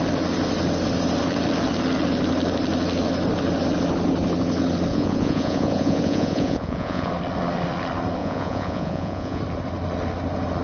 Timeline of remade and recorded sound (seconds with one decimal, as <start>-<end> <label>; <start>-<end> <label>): 0.0-4.9 recorded; 4.9-7.1 remade; 7.1-8.2 recorded; 8.2-9.4 remade; 9.4-10.6 recorded